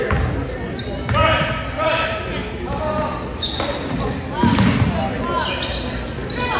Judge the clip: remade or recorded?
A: recorded